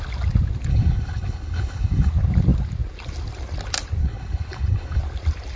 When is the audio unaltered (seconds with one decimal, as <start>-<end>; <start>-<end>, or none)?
0.0-0.7; 2.1-4.0; 5.0-5.6